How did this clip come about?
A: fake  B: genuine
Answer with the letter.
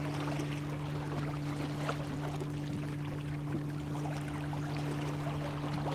B